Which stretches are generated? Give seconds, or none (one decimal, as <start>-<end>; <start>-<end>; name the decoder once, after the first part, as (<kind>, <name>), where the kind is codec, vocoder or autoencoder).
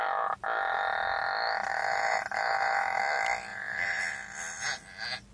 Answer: 1.7-3.0 (vocoder, BigVGAN v2); 3.5-4.0